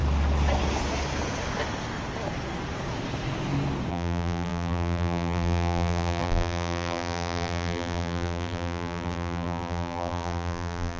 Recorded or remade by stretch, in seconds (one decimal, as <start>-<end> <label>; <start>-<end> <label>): 0.0-3.9 recorded; 3.9-11.0 remade

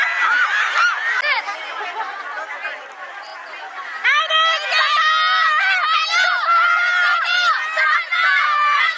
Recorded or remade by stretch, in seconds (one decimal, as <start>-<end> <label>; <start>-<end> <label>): 0.0-8.3 recorded; 8.3-9.0 remade

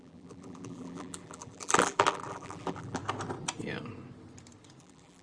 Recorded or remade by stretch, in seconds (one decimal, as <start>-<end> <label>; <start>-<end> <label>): 0.0-3.0 remade; 3.0-4.8 recorded; 4.8-5.2 remade

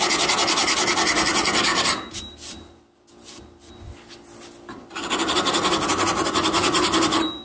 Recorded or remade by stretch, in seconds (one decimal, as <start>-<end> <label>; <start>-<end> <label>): 0.0-1.7 recorded; 1.7-4.1 remade; 4.1-7.4 recorded

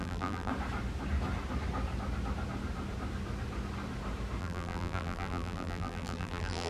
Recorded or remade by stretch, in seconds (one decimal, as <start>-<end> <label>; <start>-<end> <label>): 0.0-0.5 remade; 0.5-4.4 recorded; 4.4-6.7 remade

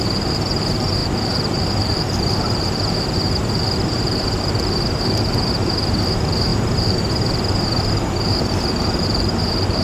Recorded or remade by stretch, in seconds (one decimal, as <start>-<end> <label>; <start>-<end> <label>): 0.0-9.8 remade

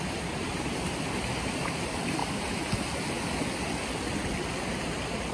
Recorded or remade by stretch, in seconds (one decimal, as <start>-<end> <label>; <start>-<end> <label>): 0.0-2.2 remade; 2.2-4.5 recorded; 4.5-5.3 remade